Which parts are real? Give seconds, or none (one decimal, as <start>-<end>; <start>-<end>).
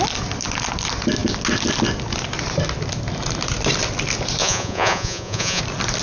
0.0-4.4; 5.6-6.0